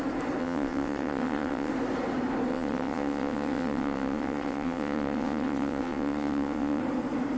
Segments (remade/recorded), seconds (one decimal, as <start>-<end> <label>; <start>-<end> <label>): 0.0-0.4 recorded; 0.4-1.7 remade; 1.7-2.5 recorded; 2.5-6.8 remade; 6.8-7.4 recorded